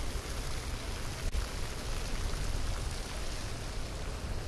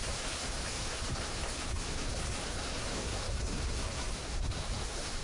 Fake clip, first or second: second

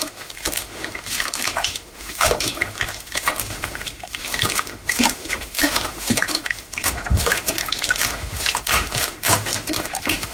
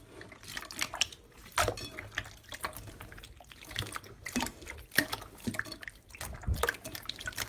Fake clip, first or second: first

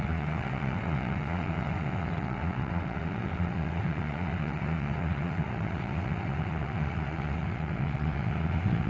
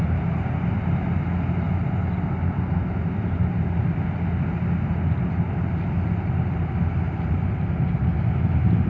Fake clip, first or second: first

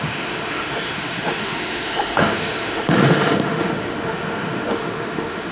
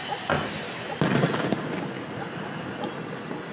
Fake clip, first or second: first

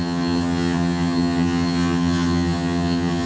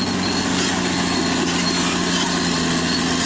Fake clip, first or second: first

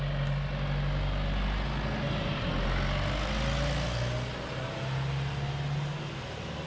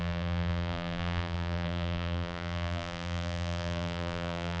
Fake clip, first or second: second